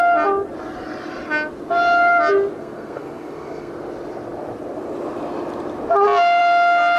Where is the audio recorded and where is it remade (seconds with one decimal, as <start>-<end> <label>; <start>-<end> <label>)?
0.0-2.6 recorded; 2.6-3.7 remade; 3.7-7.0 recorded